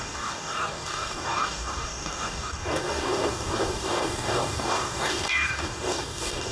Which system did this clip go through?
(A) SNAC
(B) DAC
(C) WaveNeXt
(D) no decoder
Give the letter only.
B